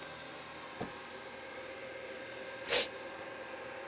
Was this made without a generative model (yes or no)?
yes